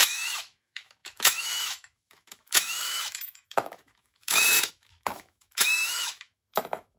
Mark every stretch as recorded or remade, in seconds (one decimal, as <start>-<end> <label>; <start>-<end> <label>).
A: 0.0-7.0 remade

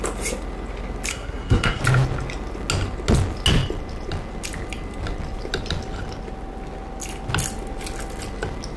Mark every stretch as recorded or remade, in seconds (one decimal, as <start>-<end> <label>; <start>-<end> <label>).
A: 0.0-1.1 recorded; 1.1-1.8 remade; 1.8-8.8 recorded

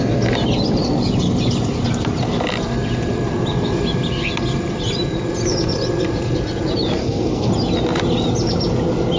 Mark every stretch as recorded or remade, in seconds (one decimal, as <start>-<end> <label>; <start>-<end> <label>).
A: 0.0-7.0 recorded; 7.0-7.5 remade; 7.5-9.2 recorded

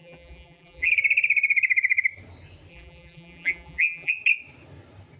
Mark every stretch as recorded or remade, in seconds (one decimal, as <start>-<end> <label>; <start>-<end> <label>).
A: 0.0-0.9 remade; 0.9-2.7 recorded; 2.7-4.1 remade; 4.1-5.2 recorded